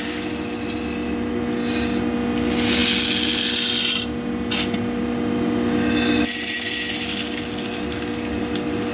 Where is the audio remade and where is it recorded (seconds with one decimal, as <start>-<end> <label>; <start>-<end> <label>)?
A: 0.0-8.9 recorded